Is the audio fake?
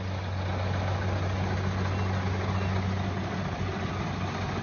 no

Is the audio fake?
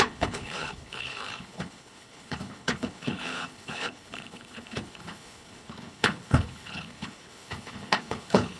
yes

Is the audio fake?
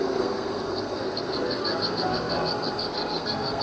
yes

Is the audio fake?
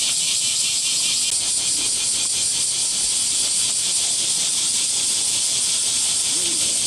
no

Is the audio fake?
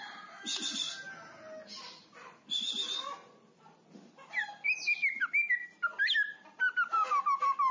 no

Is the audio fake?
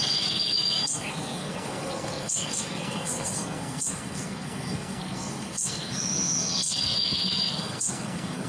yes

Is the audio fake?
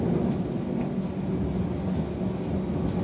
no